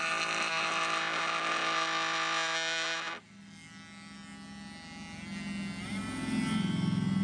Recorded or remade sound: recorded